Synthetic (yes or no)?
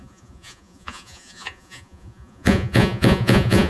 yes